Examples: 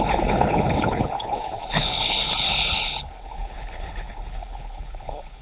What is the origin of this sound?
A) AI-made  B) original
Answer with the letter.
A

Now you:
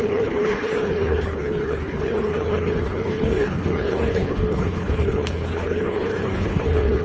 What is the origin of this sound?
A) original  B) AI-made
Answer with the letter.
B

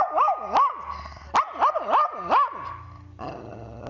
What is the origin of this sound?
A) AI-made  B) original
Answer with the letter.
B